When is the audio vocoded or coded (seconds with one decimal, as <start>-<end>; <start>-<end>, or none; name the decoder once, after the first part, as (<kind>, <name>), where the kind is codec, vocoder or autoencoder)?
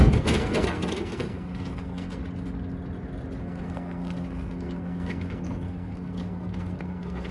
0.0-2.2 (codec, SNAC); 3.4-7.3